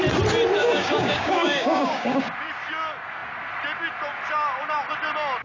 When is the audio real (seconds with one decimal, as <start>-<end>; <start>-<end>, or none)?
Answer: 0.0-0.6; 2.2-5.4